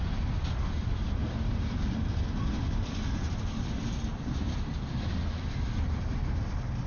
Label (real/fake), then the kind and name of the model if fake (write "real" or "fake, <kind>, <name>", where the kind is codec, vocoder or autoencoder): real